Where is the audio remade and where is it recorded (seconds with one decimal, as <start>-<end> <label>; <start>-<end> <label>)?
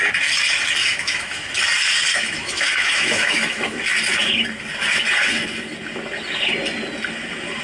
0.0-0.8 recorded; 0.8-1.5 remade; 1.5-2.1 recorded; 2.1-3.9 remade; 3.9-7.6 recorded